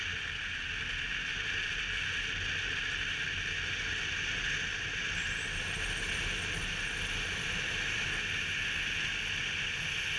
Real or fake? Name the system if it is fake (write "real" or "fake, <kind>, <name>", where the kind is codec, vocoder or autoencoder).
real